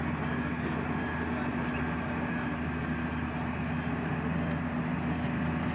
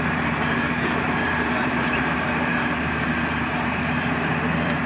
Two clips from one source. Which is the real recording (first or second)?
first